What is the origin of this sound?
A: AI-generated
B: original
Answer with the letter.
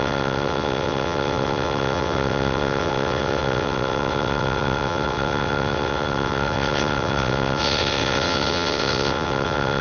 A